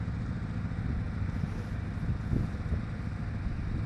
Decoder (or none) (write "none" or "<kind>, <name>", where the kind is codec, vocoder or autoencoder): none